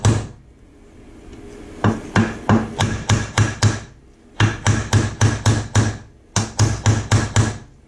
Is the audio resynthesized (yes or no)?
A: no